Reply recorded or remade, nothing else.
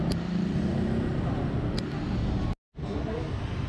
recorded